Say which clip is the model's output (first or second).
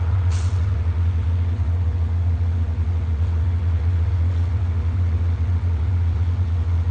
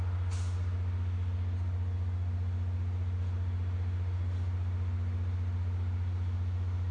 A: first